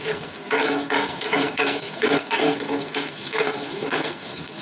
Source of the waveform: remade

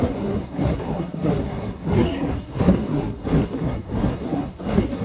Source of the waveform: remade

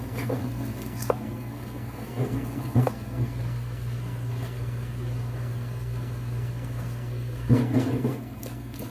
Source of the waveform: remade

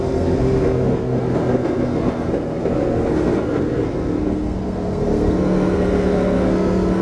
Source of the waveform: remade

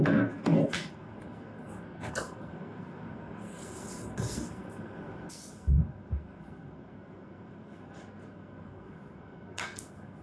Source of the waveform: remade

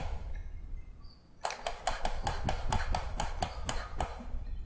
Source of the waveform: recorded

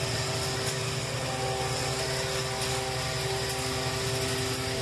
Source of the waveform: recorded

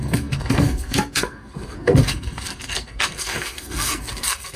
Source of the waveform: remade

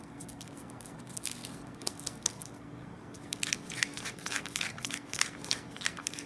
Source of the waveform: remade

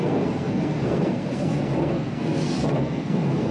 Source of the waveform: remade